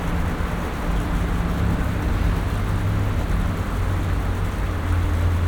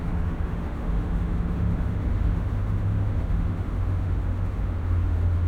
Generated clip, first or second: second